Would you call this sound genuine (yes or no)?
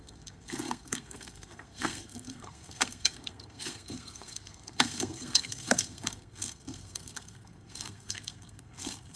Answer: no